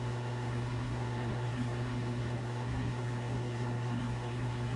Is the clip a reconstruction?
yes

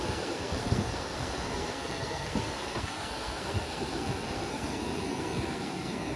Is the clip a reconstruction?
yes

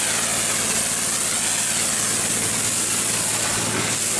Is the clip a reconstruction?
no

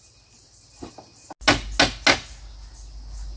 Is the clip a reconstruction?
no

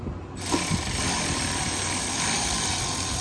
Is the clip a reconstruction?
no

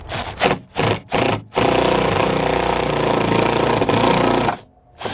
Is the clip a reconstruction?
no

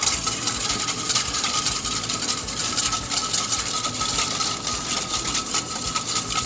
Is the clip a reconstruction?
no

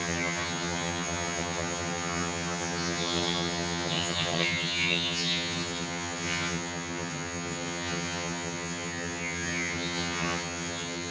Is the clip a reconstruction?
yes